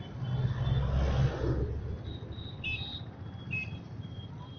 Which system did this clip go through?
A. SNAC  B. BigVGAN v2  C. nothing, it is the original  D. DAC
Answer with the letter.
C